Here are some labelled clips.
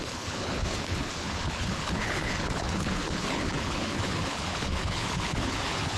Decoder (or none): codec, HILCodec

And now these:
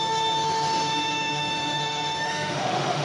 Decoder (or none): autoencoder, DAC-VAE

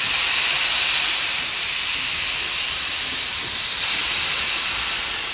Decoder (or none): vocoder, BigVGAN v2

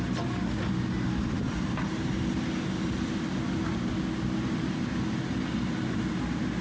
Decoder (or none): none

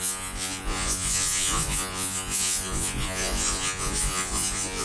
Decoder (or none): vocoder, Vocos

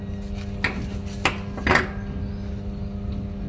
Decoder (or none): none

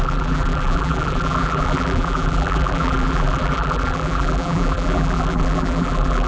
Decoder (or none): vocoder, BigVGAN v2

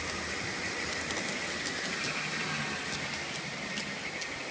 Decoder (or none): none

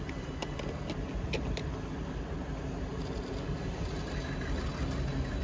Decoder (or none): none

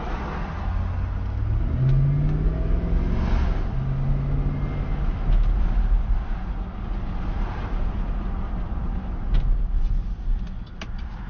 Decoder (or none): none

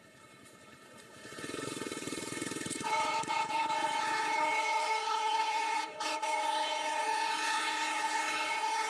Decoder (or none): codec, HILCodec